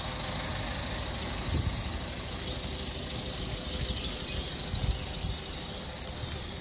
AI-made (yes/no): no